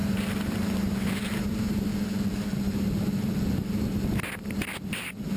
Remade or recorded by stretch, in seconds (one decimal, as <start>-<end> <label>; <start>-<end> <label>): 0.0-1.9 remade; 1.9-5.4 recorded